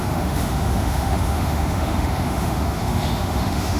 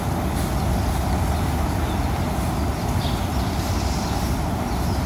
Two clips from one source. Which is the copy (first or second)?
first